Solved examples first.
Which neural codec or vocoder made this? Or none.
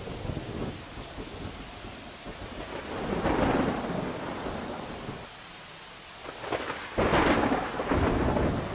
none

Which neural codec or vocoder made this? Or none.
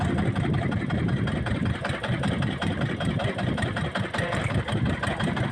vocoder, BigVGAN v2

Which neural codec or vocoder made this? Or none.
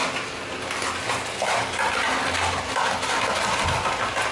none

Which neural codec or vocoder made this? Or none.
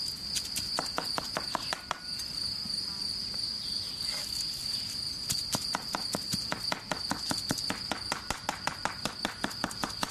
none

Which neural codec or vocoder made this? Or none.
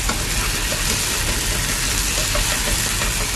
none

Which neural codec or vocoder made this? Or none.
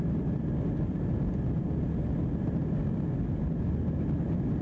none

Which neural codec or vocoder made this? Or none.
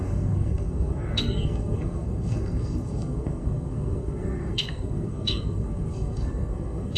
codec, SNAC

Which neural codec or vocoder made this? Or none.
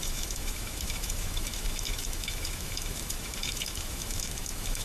autoencoder, DAC-VAE